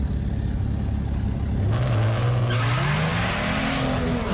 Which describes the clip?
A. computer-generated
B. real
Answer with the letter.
B